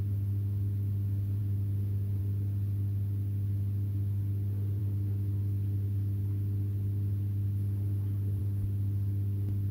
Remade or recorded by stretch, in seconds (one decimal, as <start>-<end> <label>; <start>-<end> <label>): 0.0-9.7 recorded